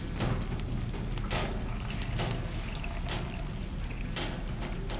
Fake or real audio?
real